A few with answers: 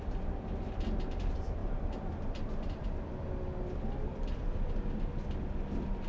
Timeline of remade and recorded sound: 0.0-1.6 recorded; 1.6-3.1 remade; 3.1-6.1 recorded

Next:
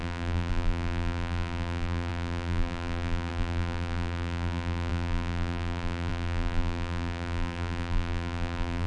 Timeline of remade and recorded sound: 0.0-8.9 remade

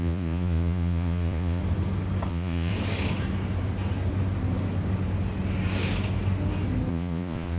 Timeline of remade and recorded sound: 0.0-1.6 remade; 1.6-2.3 recorded; 2.3-2.7 remade; 2.7-6.9 recorded; 6.9-7.6 remade

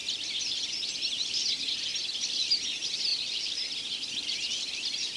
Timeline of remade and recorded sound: 0.0-0.7 recorded; 0.7-1.9 remade; 1.9-2.7 recorded; 2.7-3.1 remade; 3.1-4.1 recorded; 4.1-5.2 remade

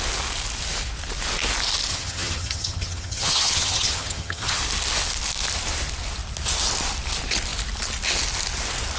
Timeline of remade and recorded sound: 0.0-1.9 recorded; 1.9-4.6 remade; 4.6-9.0 recorded

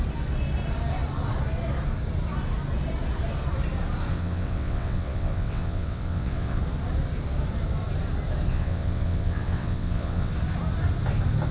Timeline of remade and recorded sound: 0.0-4.1 recorded; 4.1-6.6 remade; 6.6-8.5 recorded; 8.5-10.3 remade; 10.3-11.5 recorded